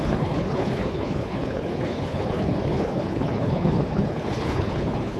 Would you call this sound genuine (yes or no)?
no